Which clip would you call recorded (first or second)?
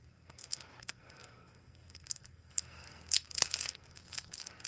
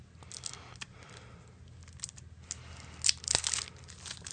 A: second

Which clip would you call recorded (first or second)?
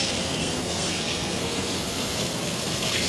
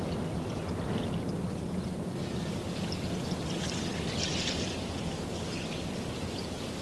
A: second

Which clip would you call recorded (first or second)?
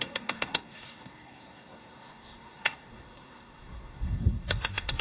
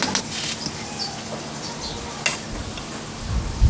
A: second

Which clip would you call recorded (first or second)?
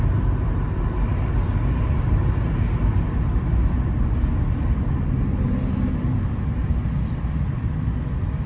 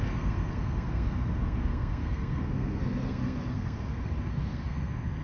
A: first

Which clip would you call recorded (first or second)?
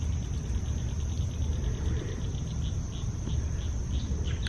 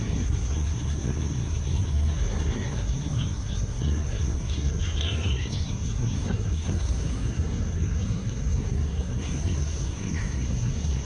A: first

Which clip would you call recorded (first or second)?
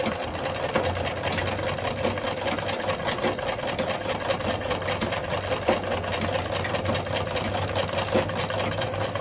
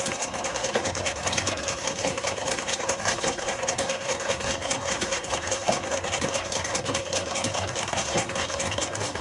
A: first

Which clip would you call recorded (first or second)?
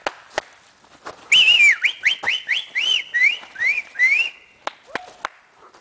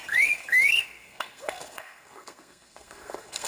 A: first